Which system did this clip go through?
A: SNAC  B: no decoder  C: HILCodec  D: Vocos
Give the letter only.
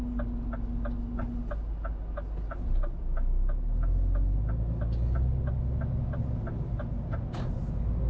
B